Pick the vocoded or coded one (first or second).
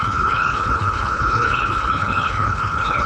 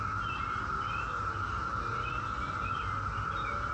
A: first